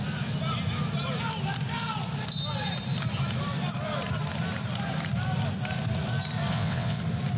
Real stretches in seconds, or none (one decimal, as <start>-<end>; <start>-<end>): 0.0-6.5; 7.0-7.4